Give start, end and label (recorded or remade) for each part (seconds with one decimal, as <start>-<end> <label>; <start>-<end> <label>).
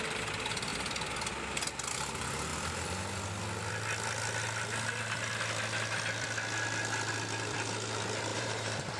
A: 0.0-8.3 recorded; 8.3-9.0 remade